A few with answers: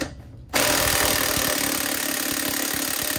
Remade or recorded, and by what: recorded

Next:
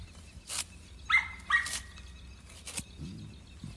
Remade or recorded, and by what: recorded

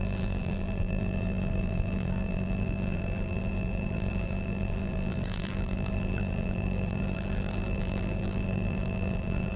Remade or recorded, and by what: remade, vocoder, BigVGAN v2